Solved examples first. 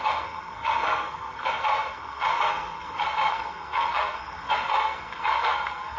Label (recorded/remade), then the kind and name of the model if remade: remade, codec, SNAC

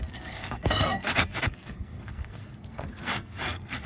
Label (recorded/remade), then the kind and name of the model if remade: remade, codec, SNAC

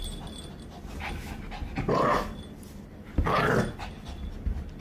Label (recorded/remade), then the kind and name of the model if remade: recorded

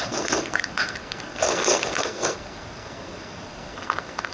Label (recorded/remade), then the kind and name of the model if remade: remade, codec, SNAC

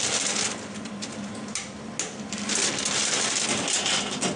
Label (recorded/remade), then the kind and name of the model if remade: recorded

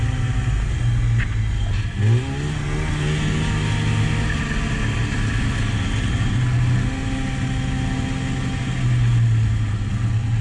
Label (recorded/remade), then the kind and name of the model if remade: recorded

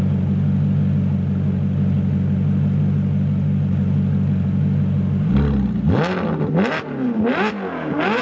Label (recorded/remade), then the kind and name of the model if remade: recorded